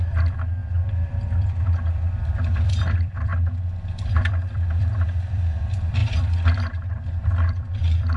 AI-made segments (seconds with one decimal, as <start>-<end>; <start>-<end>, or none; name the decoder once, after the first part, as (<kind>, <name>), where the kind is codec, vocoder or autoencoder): 0.0-3.3 (vocoder, BigVGAN v2); 4.2-8.2